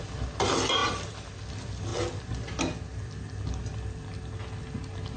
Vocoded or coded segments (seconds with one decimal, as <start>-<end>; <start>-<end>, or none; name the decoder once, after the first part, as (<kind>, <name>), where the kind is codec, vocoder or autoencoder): none